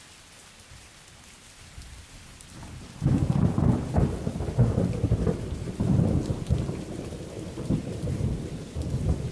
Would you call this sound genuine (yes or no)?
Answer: no